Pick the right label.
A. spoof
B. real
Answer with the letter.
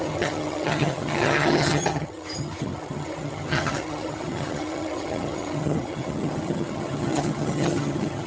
A